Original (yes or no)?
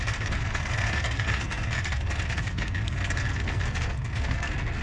no